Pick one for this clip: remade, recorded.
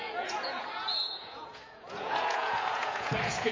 remade